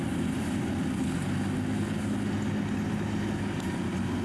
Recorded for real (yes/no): yes